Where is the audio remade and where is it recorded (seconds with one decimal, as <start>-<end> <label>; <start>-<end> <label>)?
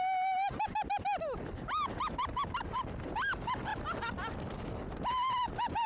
0.0-5.9 recorded